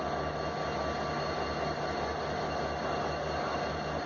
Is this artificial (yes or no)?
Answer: no